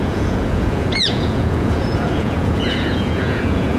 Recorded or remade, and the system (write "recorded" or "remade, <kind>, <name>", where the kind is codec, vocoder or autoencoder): remade, vocoder, Vocos